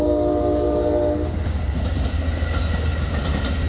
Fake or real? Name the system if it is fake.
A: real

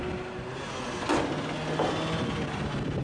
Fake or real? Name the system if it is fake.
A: real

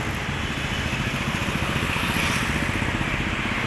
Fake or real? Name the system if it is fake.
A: real